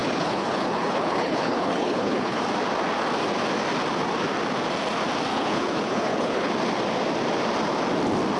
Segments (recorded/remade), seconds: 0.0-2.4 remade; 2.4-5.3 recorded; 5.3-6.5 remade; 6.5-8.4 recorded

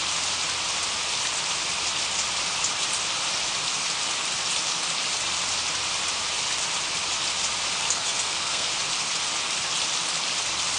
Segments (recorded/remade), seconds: 0.0-7.8 recorded; 7.8-8.7 remade; 8.7-10.8 recorded

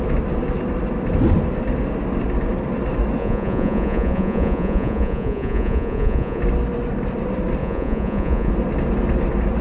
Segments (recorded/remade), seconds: 0.0-3.2 recorded; 3.2-6.4 remade; 6.4-7.6 recorded; 7.6-8.5 remade; 8.5-9.6 recorded

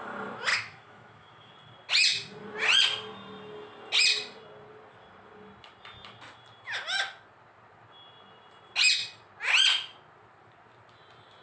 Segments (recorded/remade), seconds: 0.0-0.5 recorded; 0.5-1.5 remade; 1.5-11.4 recorded